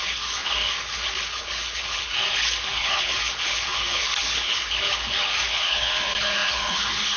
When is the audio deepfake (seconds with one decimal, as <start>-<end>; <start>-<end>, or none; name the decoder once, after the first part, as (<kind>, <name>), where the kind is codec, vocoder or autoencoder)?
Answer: 0.0-7.2 (codec, HILCodec)